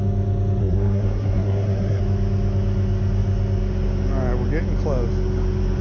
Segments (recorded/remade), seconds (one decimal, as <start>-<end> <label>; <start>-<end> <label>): 0.0-0.6 recorded; 0.6-2.0 remade; 2.0-5.8 recorded